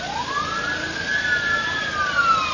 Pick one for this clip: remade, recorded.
recorded